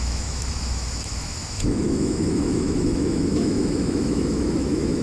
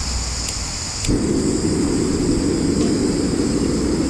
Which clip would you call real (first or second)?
second